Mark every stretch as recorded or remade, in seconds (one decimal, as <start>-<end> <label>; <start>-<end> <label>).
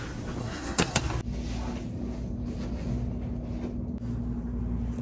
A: 0.0-0.4 recorded; 0.4-1.0 remade; 1.0-5.0 recorded